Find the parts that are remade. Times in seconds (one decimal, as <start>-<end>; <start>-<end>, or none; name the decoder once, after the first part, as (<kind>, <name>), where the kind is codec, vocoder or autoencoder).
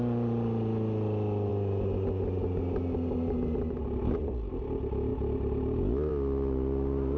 none